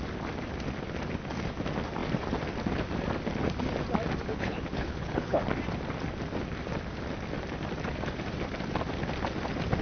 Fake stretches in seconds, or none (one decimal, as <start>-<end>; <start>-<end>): 4.3-5.4